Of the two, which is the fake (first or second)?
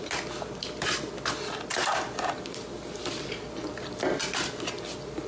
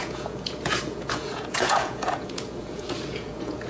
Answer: second